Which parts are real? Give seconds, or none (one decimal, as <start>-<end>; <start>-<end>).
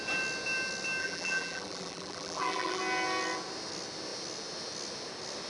0.0-1.0; 2.8-5.5